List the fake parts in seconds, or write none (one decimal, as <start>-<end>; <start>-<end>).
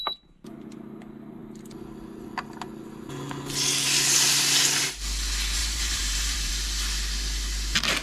5.6-6.5